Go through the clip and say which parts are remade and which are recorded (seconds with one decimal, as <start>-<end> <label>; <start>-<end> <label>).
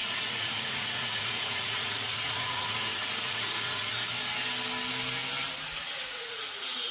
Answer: 0.0-3.9 remade; 3.9-5.9 recorded; 5.9-6.9 remade